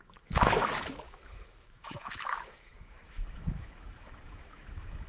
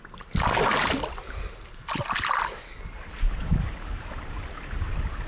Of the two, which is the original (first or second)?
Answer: second